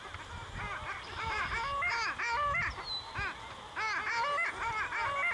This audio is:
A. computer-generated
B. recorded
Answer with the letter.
B